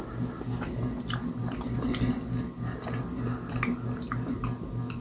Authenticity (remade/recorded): recorded